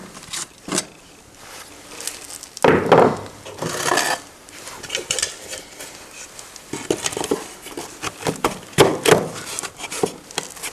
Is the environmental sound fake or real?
real